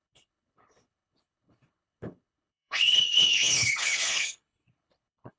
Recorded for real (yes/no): no